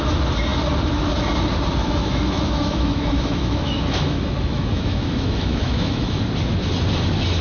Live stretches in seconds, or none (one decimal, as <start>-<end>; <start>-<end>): 0.0-1.8; 6.2-7.4